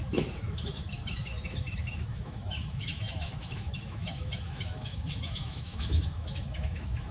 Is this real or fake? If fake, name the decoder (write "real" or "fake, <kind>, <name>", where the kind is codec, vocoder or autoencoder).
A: fake, autoencoder, DAC-VAE